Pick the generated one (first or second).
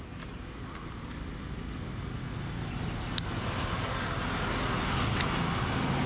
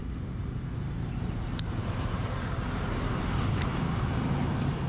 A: second